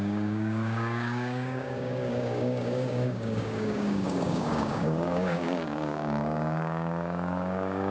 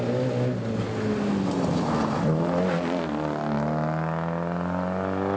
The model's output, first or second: first